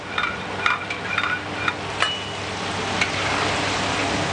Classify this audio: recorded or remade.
recorded